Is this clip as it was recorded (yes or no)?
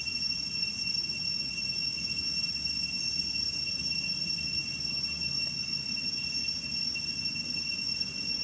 yes